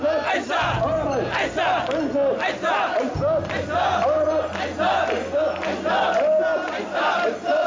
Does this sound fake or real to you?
real